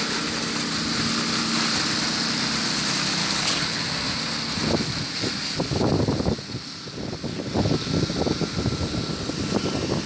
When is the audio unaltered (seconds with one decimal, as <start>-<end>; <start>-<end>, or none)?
0.0-3.2; 3.8-10.1